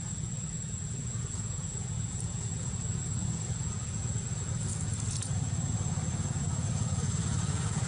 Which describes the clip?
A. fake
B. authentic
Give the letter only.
A